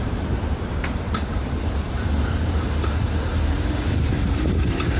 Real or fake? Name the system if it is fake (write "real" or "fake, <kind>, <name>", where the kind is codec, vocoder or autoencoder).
fake, vocoder, BigVGAN v2